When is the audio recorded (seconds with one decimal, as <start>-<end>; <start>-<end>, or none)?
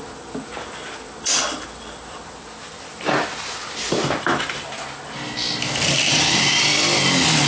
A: 0.0-7.5